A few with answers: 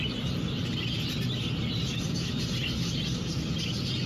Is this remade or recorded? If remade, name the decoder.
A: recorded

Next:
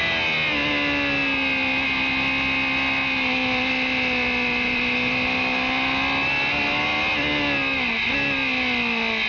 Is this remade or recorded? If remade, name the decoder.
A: recorded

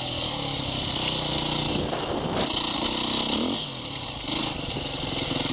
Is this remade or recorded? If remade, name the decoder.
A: recorded